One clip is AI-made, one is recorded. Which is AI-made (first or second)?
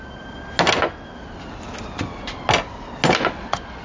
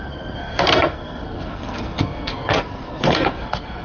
second